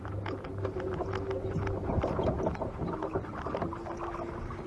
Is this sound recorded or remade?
recorded